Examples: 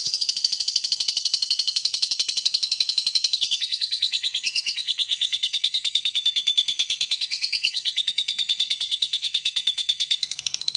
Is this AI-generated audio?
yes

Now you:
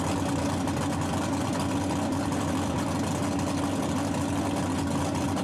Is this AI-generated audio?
no